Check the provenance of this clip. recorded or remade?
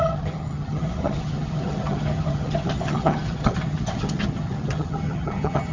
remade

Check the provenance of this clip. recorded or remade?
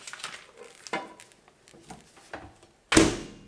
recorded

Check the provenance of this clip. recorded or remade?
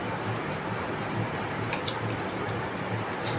recorded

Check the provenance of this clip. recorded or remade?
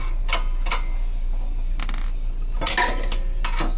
recorded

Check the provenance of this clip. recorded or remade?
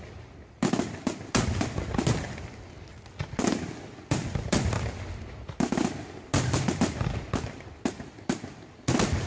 recorded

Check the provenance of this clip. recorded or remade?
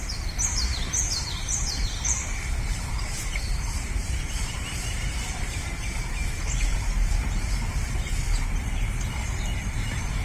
remade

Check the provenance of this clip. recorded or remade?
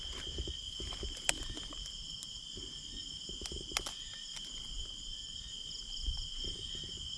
recorded